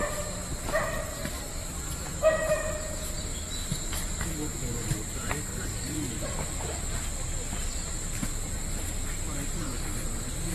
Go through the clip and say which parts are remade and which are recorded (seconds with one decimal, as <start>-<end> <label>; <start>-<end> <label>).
0.0-5.5 recorded; 5.5-6.1 remade; 6.1-10.5 recorded